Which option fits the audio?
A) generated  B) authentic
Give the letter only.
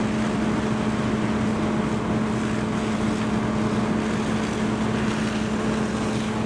B